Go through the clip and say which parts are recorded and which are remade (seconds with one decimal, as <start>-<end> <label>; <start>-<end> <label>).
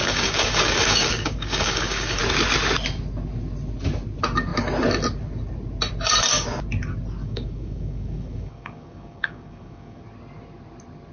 0.0-2.2 remade; 2.2-7.2 recorded; 7.2-10.0 remade; 10.0-11.1 recorded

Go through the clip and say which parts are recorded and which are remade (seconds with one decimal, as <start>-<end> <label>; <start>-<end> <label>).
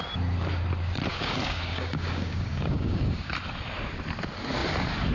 0.0-1.1 recorded; 1.1-3.3 remade; 3.3-5.1 recorded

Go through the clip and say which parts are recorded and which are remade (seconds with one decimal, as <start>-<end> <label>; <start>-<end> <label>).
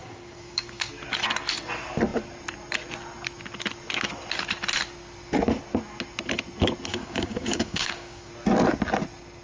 0.0-0.9 remade; 0.9-6.9 recorded; 6.9-8.3 remade; 8.3-9.4 recorded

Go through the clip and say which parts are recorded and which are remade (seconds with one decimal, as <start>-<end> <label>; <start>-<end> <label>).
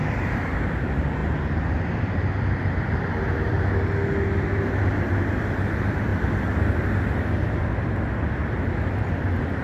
0.0-9.6 recorded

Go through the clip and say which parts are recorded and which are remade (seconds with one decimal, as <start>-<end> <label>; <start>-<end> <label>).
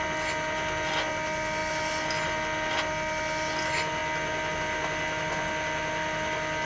0.0-6.7 recorded